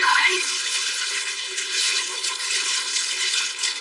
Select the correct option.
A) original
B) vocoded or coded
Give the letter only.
B